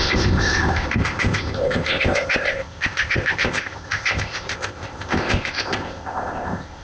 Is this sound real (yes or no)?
no